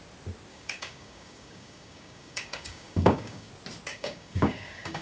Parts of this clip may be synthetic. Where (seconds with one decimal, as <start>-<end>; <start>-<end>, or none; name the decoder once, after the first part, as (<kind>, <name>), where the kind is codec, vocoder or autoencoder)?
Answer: 0.5-3.5 (codec, DAC); 3.9-5.0